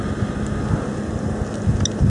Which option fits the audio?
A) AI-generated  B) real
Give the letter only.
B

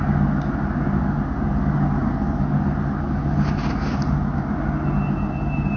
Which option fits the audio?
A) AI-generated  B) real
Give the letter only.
B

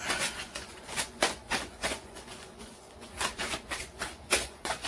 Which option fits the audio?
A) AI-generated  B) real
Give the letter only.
A